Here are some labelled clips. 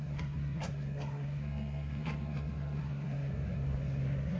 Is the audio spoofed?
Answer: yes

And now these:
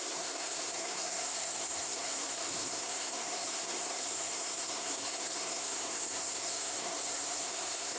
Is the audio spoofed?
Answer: yes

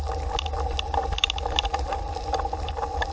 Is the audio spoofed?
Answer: no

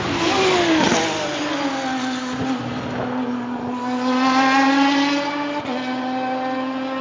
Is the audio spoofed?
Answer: no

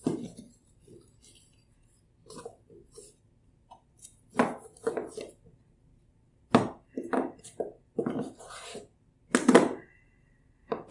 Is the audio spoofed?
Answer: no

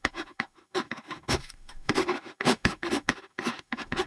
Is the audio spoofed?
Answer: yes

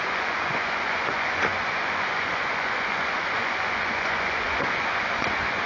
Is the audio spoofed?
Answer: yes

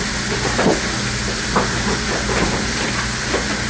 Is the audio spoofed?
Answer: no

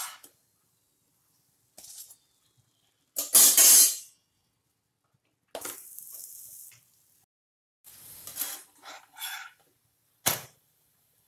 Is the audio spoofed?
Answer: no